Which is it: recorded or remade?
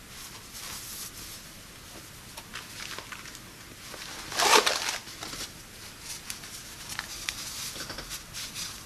recorded